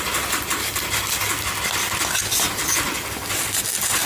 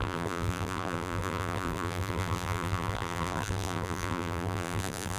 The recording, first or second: first